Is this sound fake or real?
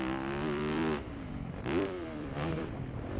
fake